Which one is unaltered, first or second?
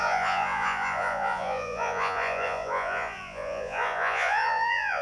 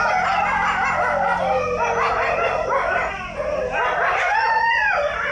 second